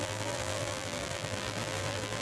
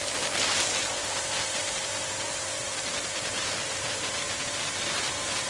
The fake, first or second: first